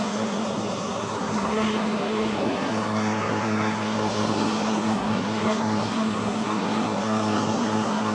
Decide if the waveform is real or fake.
fake